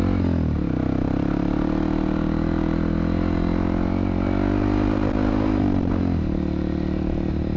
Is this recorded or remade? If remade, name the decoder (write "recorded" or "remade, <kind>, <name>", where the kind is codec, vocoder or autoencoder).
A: recorded